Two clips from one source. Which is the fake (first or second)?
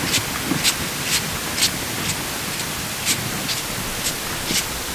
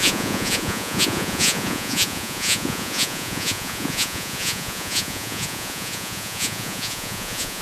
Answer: second